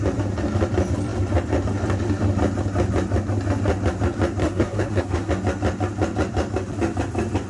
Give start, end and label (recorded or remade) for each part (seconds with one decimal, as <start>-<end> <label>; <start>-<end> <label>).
0.0-4.4 recorded; 4.4-5.3 remade; 5.3-7.5 recorded